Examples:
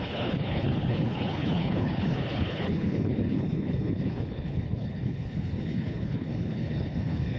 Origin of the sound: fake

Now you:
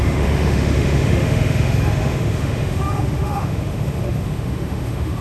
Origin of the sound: fake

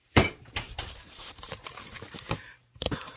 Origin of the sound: fake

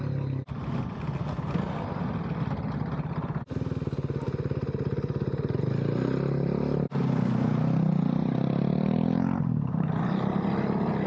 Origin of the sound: real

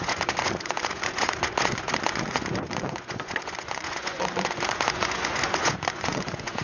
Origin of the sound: fake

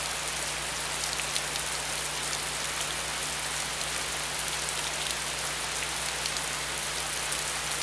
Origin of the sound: real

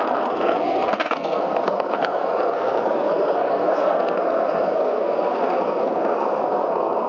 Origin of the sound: fake